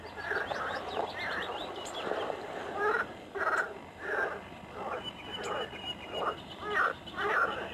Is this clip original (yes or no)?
yes